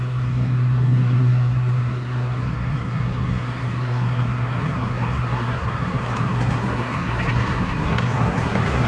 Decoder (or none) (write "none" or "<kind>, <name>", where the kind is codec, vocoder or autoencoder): codec, SNAC